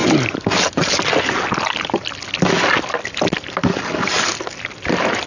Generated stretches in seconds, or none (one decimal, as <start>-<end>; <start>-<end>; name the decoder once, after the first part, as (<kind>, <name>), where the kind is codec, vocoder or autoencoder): none